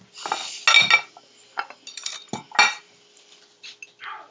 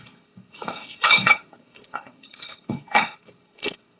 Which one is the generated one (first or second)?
second